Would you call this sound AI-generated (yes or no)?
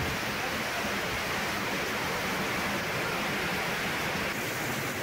no